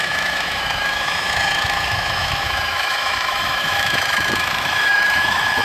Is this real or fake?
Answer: fake